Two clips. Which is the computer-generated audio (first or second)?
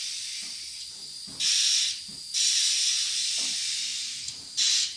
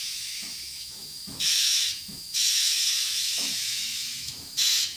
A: second